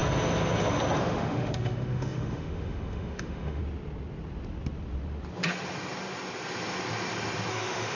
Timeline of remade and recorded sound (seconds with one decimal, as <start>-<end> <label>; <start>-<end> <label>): 0.0-1.0 recorded; 1.0-3.6 remade; 3.6-7.5 recorded; 7.5-8.0 remade